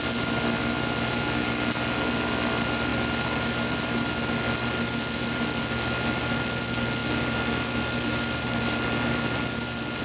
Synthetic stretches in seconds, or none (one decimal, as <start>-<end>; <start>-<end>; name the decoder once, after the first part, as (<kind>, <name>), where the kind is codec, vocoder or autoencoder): none